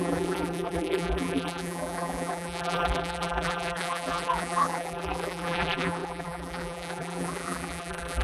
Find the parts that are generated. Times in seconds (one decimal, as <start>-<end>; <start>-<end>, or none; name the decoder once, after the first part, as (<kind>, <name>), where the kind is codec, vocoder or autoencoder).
0.0-8.2 (vocoder, BigVGAN v2)